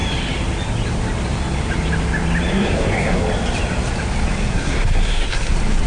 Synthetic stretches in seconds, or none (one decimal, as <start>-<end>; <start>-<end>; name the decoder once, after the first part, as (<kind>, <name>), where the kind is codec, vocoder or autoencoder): 2.5-3.2 (codec, SNAC); 4.5-5.5